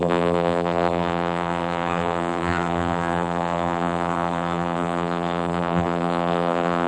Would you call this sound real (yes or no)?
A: no